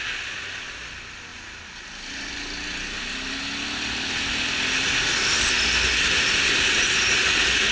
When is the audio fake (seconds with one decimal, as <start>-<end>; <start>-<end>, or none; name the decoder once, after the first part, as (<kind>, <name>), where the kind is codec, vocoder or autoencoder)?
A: none